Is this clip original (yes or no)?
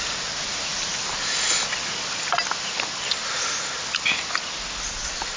yes